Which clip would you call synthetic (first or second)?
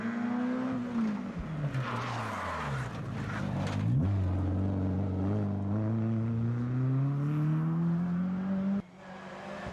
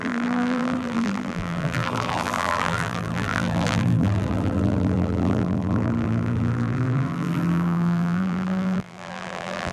second